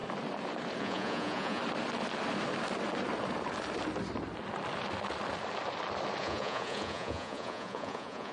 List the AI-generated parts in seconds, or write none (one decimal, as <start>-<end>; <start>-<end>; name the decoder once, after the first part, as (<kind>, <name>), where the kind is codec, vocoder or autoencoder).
0.8-1.6 (vocoder, Vocos); 6.2-8.3